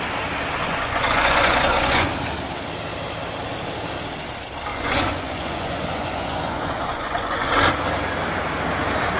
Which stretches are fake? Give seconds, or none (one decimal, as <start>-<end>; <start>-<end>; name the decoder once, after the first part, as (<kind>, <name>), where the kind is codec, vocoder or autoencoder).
0.6-2.1 (vocoder, Vocos); 4.7-7.5

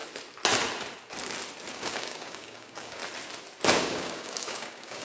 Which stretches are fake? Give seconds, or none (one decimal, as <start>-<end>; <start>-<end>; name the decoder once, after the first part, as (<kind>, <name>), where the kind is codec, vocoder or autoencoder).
1.7-3.0 (codec, DAC); 3.8-5.0

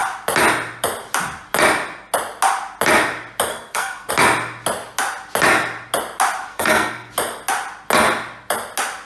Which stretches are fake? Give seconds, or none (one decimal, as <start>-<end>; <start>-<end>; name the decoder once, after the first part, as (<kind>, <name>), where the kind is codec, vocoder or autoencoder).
3.5-4.1 (codec, SNAC); 6.5-7.1

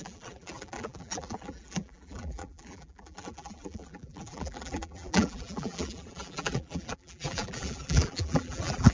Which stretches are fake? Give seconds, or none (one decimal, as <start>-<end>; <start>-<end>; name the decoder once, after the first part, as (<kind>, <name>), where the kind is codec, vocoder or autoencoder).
0.0-8.9 (vocoder, BigVGAN v2)